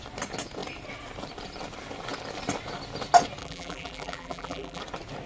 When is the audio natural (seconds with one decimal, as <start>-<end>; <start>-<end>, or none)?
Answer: 0.0-3.4; 4.8-5.3